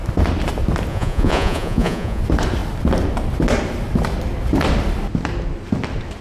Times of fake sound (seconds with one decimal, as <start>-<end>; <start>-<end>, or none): 0.9-2.2